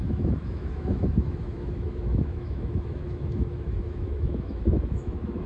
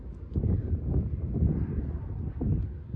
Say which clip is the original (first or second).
second